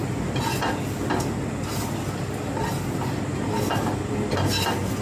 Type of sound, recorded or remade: recorded